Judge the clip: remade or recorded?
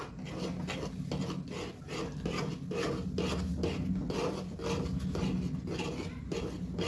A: recorded